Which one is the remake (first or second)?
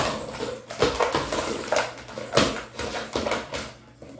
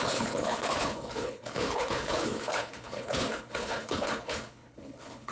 second